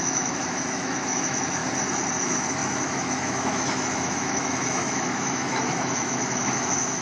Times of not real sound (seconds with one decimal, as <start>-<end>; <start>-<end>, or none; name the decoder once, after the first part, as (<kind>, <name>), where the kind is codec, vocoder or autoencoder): 0.0-1.6 (autoencoder, DAC-VAE); 2.2-7.0